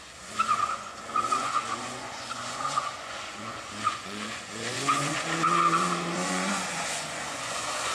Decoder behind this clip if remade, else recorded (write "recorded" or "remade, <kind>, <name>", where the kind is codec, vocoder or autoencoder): remade, vocoder, Vocos